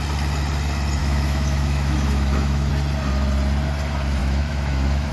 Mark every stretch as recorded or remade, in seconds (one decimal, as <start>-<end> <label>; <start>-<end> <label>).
0.0-1.0 recorded; 1.0-2.7 remade; 2.7-4.2 recorded; 4.2-5.1 remade